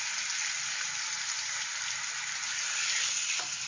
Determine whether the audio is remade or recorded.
recorded